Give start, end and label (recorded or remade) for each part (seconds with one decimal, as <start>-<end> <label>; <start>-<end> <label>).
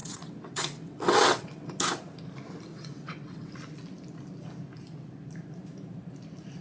0.0-1.7 remade; 1.7-2.7 recorded; 2.7-3.5 remade; 3.5-6.6 recorded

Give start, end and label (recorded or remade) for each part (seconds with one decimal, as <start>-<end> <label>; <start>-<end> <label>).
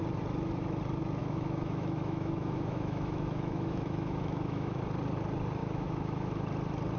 0.0-1.2 recorded; 1.2-4.8 remade; 4.8-5.6 recorded; 5.6-6.3 remade; 6.3-7.0 recorded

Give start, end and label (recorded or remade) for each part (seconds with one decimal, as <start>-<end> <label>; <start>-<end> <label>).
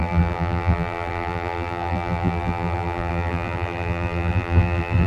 0.0-5.1 remade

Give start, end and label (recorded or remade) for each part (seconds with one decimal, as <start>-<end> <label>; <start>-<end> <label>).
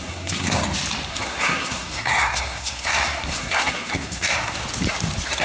0.0-0.6 remade; 0.6-1.1 recorded; 1.1-4.6 remade; 4.6-5.4 recorded